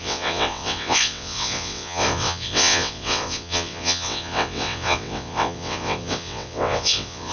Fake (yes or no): yes